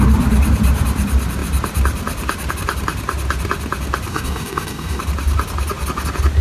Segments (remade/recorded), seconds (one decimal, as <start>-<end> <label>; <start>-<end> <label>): 0.0-4.1 recorded; 4.1-5.0 remade; 5.0-6.4 recorded